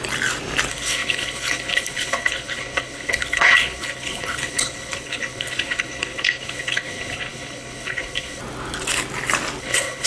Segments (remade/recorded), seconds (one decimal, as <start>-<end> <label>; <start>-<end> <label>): 0.0-0.7 recorded; 0.7-8.4 remade; 8.4-9.6 recorded; 9.6-10.1 remade

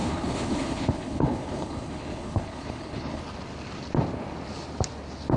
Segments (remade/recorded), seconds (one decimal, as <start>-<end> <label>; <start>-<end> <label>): 0.0-3.2 remade; 3.2-5.4 recorded

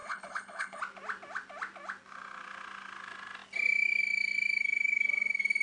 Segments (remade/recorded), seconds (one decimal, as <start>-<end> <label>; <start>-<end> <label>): 0.0-0.8 remade; 0.8-5.6 recorded

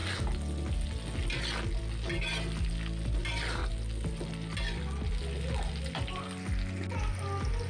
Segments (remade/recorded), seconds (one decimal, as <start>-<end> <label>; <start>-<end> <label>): 0.0-7.7 recorded

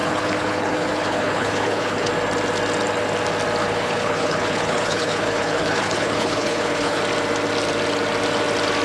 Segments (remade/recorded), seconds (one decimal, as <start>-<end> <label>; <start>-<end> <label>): 0.0-2.1 remade; 2.1-3.6 recorded; 3.6-7.0 remade; 7.0-8.8 recorded